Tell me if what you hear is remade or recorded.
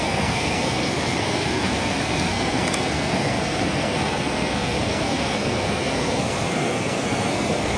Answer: remade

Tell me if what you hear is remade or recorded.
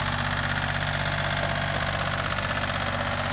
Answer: recorded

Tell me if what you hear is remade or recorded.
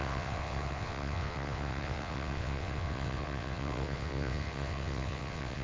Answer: remade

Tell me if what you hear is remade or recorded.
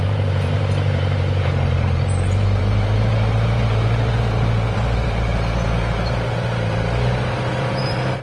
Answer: remade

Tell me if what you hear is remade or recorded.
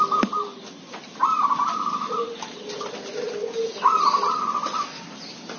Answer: recorded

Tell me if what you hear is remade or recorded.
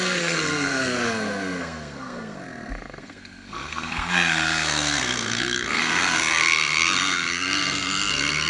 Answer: remade